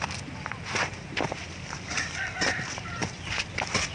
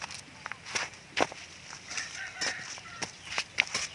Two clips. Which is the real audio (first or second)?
second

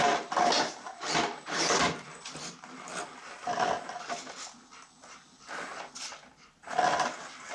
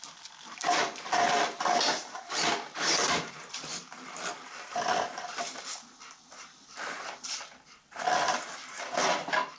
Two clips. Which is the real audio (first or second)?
first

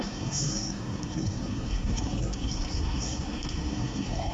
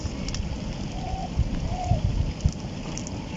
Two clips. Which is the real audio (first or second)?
second